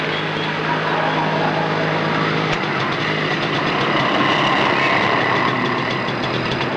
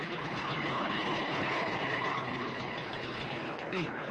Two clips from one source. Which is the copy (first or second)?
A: second